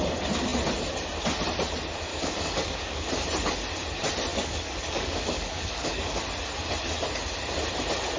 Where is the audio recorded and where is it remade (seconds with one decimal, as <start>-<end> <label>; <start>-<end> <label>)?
0.0-2.1 recorded; 2.1-3.1 remade; 3.1-4.3 recorded; 4.3-6.2 remade; 6.2-8.2 recorded